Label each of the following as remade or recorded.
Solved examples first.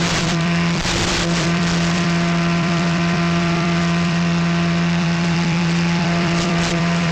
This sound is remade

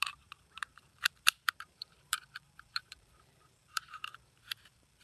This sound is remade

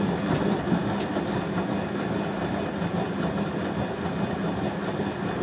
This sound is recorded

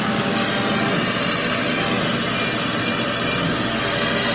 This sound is recorded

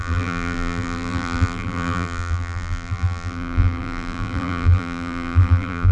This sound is remade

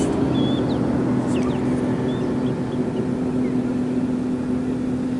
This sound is recorded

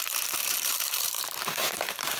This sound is remade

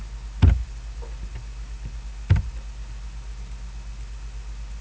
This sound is recorded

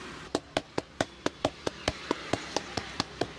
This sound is remade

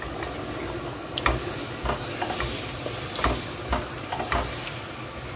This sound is recorded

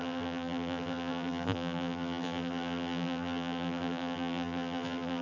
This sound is remade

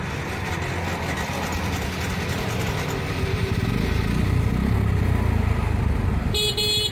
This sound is recorded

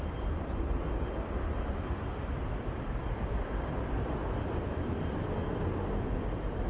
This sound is remade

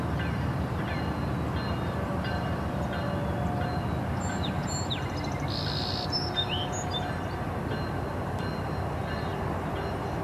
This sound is recorded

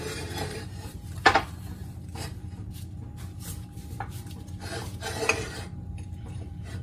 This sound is remade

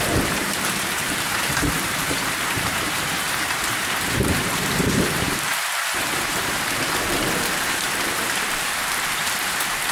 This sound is remade